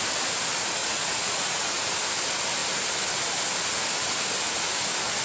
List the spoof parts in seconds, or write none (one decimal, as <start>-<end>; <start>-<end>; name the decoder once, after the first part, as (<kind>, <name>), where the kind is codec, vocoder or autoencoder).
0.8-1.9 (vocoder, Vocos)